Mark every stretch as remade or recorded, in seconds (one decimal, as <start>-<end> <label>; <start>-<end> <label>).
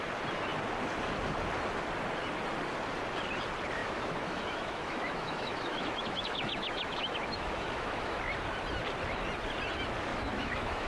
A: 0.0-3.8 recorded; 3.8-8.2 remade; 8.2-10.1 recorded; 10.1-10.9 remade